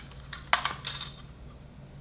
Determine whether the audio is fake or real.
real